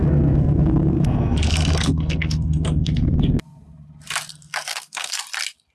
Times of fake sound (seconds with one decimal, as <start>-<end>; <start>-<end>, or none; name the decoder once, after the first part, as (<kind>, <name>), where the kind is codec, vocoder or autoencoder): 0.0-3.4 (codec, SNAC); 4.3-5.2

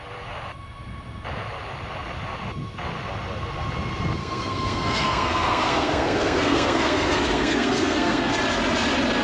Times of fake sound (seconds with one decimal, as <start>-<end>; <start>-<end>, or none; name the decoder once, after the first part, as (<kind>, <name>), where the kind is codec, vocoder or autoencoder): 4.2-8.3 (codec, SNAC)

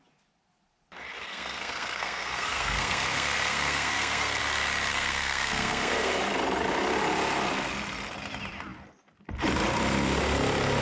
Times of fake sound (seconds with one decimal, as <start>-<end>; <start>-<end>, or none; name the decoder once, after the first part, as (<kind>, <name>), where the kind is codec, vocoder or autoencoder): 1.2-4.4 (codec, SNAC); 4.9-6.1

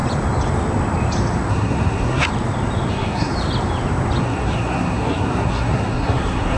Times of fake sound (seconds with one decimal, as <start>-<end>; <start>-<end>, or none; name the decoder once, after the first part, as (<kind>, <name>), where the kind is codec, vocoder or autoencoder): 1.5-2.3 (codec, SNAC); 2.9-3.3; 4.2-6.6

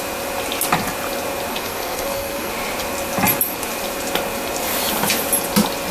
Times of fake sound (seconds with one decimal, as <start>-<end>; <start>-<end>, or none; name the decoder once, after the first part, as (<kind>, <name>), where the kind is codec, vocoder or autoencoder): 1.5-2.5 (codec, SNAC)

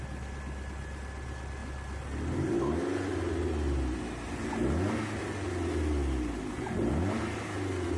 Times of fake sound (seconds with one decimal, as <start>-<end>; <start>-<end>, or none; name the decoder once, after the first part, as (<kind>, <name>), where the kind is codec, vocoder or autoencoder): none

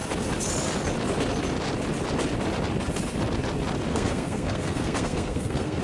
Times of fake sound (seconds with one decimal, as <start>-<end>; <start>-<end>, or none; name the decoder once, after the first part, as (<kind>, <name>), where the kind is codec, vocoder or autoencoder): 3.9-5.8 (codec, SNAC)

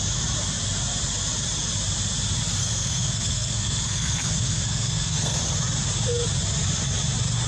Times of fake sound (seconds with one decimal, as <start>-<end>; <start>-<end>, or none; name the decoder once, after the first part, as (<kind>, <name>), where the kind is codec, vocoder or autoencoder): 2.6-5.4 (codec, SNAC)